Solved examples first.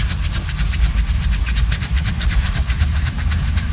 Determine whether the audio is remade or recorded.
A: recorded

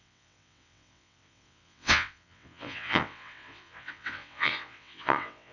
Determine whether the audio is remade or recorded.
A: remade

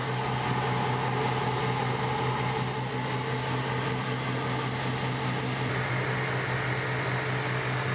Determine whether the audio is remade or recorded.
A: recorded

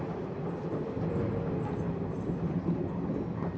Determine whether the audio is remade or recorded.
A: recorded